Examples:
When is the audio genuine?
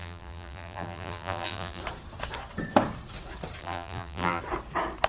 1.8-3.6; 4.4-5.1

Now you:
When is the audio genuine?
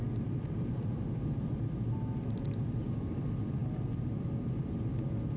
0.0-5.4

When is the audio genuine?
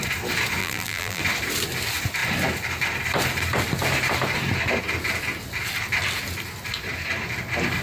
0.0-0.6; 1.2-7.8